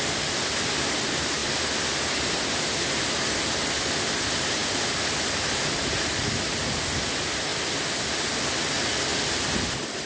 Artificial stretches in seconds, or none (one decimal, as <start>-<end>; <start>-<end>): none